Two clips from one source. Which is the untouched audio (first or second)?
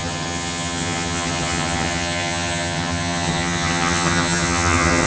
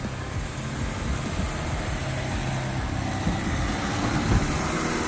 second